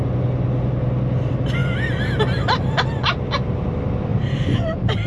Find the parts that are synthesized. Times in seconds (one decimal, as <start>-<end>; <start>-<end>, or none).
1.6-3.0; 4.1-5.1